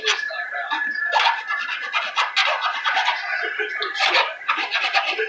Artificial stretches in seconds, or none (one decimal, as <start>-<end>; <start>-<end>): 2.4-4.8